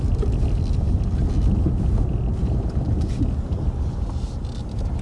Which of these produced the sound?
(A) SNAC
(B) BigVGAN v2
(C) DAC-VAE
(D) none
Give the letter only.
D